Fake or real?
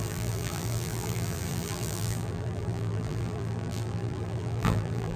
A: fake